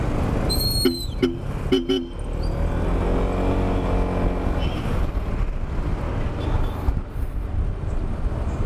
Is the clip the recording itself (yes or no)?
yes